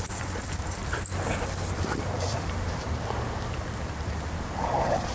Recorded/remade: remade